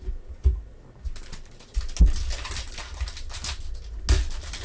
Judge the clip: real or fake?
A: real